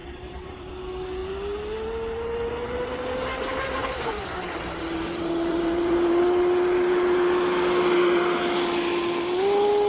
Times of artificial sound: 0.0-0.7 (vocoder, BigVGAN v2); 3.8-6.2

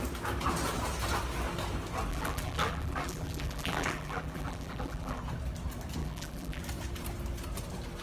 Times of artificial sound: 2.1-5.2 (vocoder, BigVGAN v2); 6.0-6.6

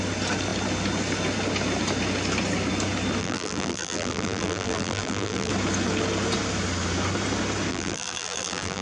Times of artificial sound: 3.2-5.5 (vocoder, BigVGAN v2); 7.7-8.8

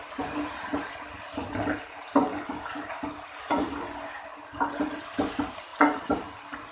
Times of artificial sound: none

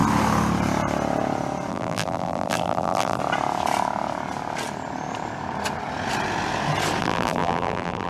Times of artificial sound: 1.7-3.2 (vocoder, BigVGAN v2); 7.0-8.1

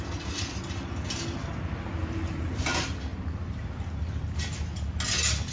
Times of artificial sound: 2.0-2.6 (vocoder, BigVGAN v2)

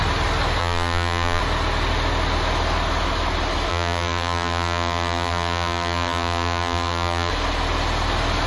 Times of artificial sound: 0.6-1.4 (vocoder, BigVGAN v2); 3.7-7.3